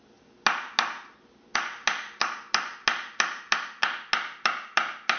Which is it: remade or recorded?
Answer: recorded